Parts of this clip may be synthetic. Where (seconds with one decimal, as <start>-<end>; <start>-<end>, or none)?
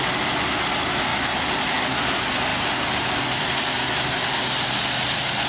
none